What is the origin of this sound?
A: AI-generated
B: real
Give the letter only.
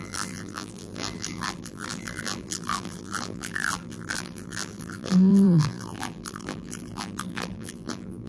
A